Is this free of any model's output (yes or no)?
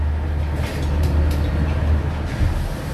yes